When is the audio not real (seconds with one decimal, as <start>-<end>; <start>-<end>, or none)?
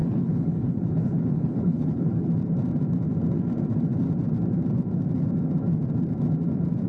0.0-2.3